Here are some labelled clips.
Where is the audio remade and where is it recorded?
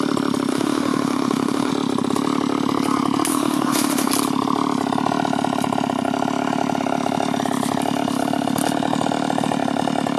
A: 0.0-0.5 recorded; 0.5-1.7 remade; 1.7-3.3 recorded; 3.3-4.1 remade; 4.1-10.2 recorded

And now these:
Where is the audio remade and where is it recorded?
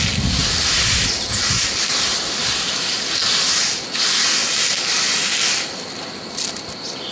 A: 0.0-7.1 recorded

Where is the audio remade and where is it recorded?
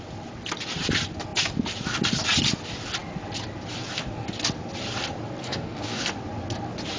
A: 0.0-5.4 recorded; 5.4-6.0 remade; 6.0-7.0 recorded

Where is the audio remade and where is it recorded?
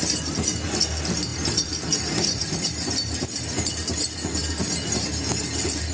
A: 0.0-1.3 recorded; 1.3-3.7 remade; 3.7-5.9 recorded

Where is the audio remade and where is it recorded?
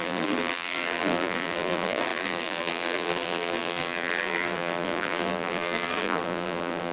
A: 0.0-6.9 remade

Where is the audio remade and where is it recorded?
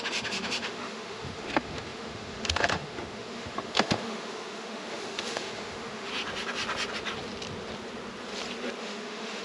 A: 0.0-6.1 remade; 6.1-8.8 recorded; 8.8-9.4 remade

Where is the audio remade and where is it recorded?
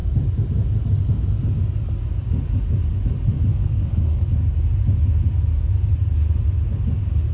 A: 0.0-3.5 recorded; 3.5-4.3 remade; 4.3-7.3 recorded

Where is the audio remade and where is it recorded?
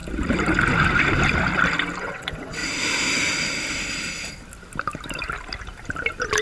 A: 0.0-2.0 recorded; 2.0-2.6 remade; 2.6-6.4 recorded